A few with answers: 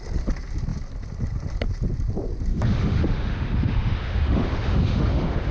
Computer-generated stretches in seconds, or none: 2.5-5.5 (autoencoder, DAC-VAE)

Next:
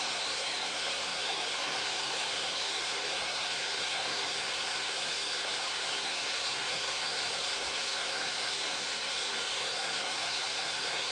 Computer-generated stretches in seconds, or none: 0.0-11.1 (codec, SNAC)

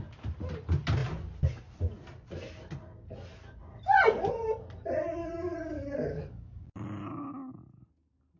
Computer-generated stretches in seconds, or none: 5.2-6.6 (codec, DAC)

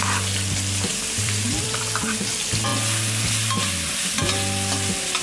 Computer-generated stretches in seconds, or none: 0.9-2.3 (vocoder, BigVGAN v2)

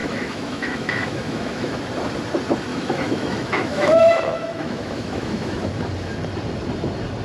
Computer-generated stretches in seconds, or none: 0.0-1.8 (autoencoder, DAC-VAE); 2.7-5.6

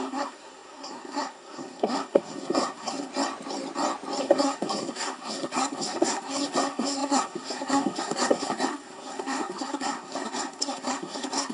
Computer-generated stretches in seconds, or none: 0.0-3.1 (codec, SNAC); 4.2-11.5

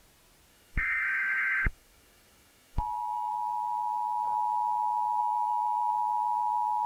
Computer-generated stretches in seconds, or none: 0.5-3.3 (autoencoder, DAC-VAE); 5.2-5.9